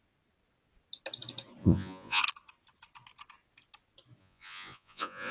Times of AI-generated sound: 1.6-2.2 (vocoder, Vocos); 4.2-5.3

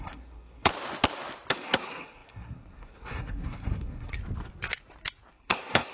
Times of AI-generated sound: 0.0-0.7 (codec, SNAC); 1.5-4.2; 5.3-5.9

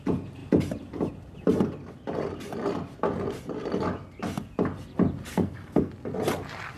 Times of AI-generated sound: 5.3-5.9 (codec, SNAC)

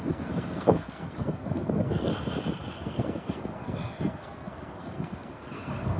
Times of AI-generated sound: 0.0-2.1 (codec, SNAC); 2.7-6.0

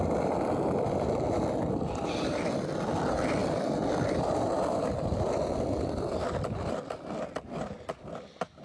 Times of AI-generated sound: none

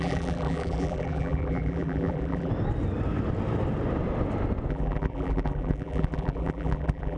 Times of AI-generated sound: 0.0-2.5 (vocoder, BigVGAN v2); 4.7-7.2

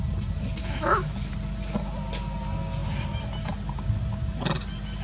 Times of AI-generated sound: 0.6-1.3 (autoencoder, DAC-VAE)